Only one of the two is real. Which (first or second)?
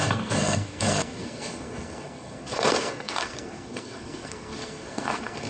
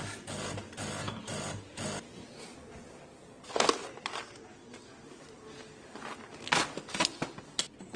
second